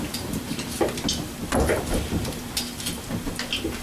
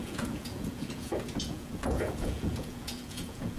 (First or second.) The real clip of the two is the first